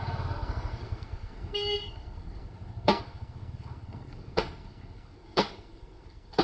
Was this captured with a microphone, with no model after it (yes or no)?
no